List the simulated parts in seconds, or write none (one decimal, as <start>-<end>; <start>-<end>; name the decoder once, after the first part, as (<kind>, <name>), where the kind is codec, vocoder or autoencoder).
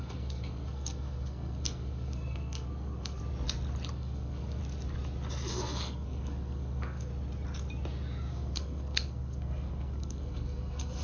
0.0-3.2 (codec, SNAC); 3.9-4.6; 5.5-7.1; 8.3-11.0